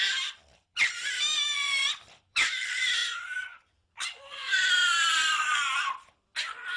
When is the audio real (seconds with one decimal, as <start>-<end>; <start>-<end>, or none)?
3.0-3.7